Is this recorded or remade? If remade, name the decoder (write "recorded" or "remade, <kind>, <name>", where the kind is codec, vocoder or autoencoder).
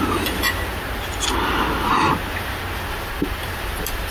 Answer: recorded